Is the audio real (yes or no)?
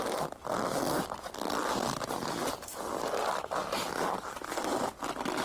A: yes